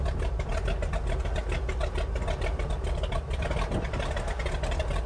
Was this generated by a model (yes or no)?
no